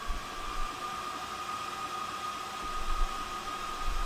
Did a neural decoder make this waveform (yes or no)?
no